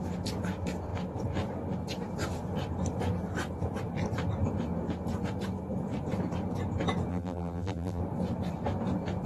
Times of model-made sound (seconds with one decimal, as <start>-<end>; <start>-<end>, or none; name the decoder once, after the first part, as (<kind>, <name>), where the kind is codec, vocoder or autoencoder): 7.1-8.0 (vocoder, BigVGAN v2)